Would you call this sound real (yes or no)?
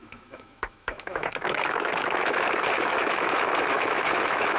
no